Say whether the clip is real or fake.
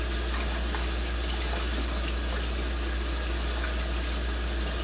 real